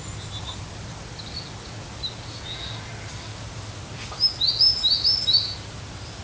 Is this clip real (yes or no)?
yes